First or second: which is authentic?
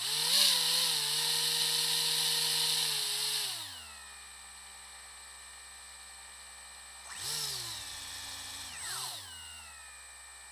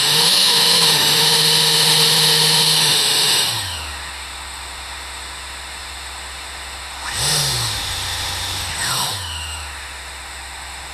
first